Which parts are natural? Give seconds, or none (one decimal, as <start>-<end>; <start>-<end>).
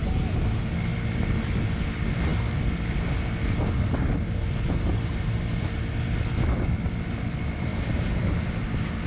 0.0-7.7